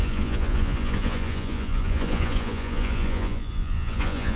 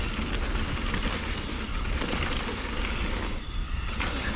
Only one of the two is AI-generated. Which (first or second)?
first